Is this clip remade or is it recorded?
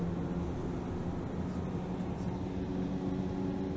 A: recorded